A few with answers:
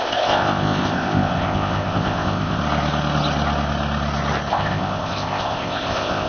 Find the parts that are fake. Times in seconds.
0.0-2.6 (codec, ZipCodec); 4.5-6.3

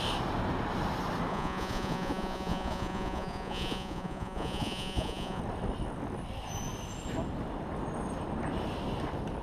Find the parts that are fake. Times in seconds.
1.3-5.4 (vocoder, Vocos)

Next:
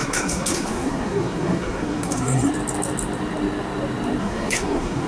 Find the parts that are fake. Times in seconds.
0.0-2.5 (codec, SNAC); 4.2-5.1